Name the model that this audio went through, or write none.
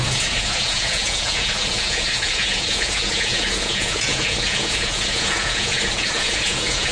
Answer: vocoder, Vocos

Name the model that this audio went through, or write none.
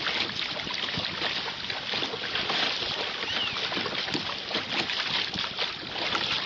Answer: none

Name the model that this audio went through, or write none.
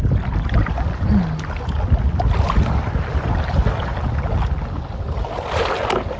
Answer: none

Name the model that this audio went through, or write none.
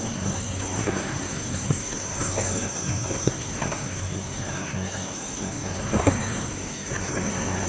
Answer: codec, SNAC